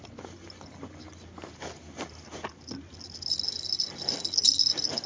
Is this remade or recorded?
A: recorded